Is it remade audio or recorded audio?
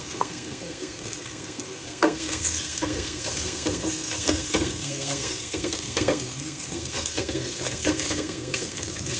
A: remade